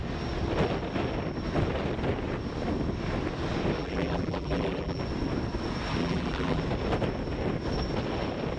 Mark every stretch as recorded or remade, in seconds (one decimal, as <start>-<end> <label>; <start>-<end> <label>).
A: 0.0-3.8 recorded; 3.8-5.0 remade; 5.0-6.0 recorded; 6.0-6.6 remade; 6.6-8.6 recorded